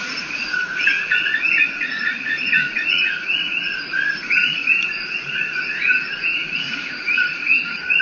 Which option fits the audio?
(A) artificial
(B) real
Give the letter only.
A